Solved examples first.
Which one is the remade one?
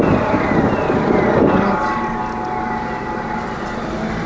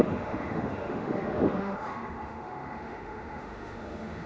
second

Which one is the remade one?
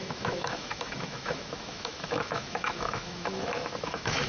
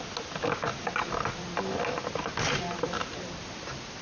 first